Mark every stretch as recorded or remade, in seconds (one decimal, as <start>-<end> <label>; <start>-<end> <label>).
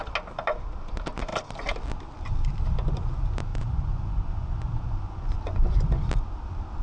0.0-3.5 recorded; 3.5-6.1 remade; 6.1-6.8 recorded